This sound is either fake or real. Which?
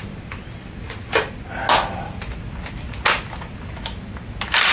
real